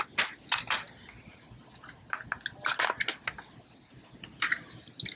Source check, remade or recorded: recorded